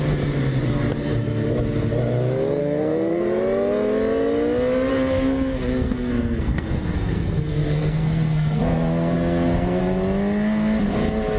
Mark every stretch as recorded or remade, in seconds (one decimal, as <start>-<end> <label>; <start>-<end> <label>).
0.0-2.6 recorded; 2.6-3.2 remade; 3.2-4.9 recorded; 4.9-9.8 remade; 9.8-11.4 recorded